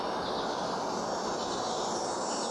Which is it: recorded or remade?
recorded